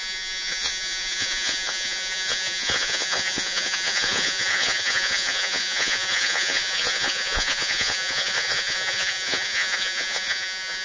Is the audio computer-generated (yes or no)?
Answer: yes